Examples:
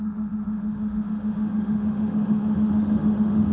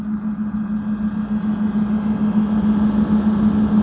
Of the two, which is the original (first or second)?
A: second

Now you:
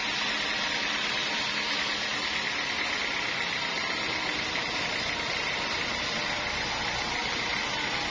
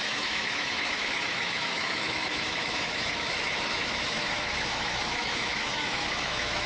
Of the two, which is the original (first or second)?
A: first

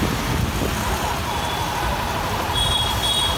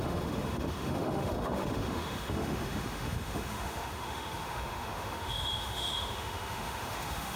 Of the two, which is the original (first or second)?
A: first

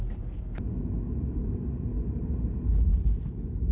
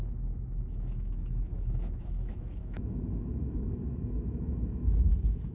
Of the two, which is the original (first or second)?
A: first